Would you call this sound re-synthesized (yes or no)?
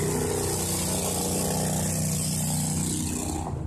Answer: no